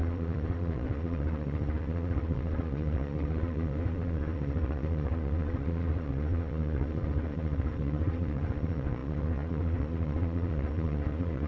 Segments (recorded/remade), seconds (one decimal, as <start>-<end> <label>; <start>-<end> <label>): 0.0-11.5 remade